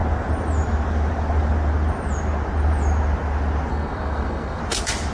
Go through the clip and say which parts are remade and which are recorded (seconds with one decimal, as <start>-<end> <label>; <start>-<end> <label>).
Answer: 0.0-3.7 recorded; 3.7-4.6 remade; 4.6-5.1 recorded